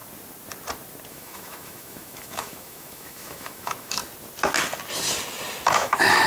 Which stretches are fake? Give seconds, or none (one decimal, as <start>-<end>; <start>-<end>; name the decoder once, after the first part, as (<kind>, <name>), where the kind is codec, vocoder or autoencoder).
1.1-4.0 (autoencoder, DAC-VAE); 5.7-6.3